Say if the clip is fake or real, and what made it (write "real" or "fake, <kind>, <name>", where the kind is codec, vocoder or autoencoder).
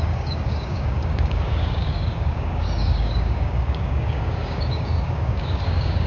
fake, codec, DAC